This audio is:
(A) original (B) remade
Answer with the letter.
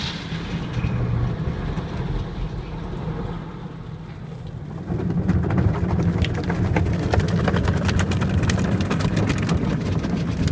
A